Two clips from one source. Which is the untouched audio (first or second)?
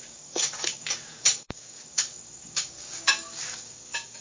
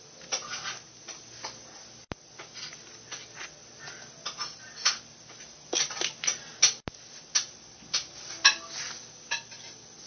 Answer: second